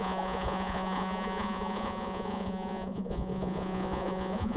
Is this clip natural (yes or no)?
no